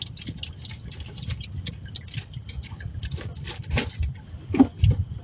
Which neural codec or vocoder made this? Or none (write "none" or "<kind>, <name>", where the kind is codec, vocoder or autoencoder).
none